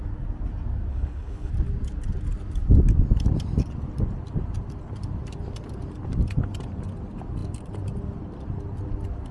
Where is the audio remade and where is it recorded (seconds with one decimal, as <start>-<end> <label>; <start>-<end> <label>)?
0.0-0.9 recorded; 0.9-1.5 remade; 1.5-9.3 recorded